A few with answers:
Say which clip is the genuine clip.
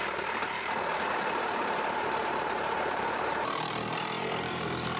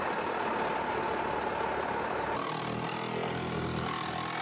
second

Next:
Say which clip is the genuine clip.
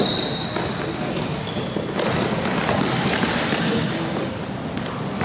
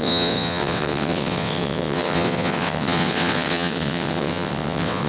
first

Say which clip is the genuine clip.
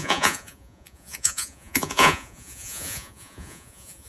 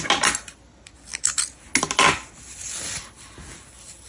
second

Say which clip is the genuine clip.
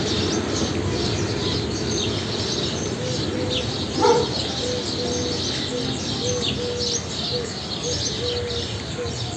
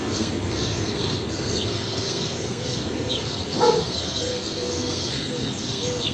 first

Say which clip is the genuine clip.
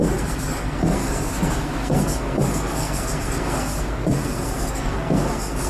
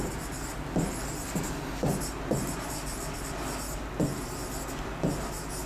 second